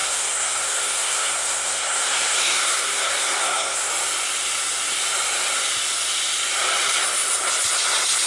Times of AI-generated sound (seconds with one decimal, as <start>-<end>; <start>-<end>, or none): 0.0-3.9